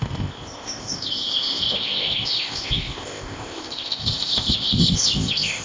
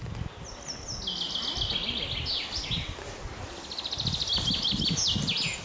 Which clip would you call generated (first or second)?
first